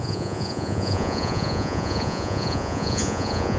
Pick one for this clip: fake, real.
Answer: fake